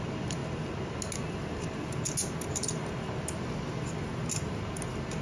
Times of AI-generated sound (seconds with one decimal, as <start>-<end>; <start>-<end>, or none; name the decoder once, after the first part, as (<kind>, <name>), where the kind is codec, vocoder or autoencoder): none